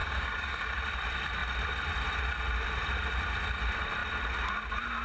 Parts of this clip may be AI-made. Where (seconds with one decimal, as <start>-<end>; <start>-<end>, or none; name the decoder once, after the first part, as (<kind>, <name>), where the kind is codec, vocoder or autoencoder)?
0.0-0.7 (codec, DAC)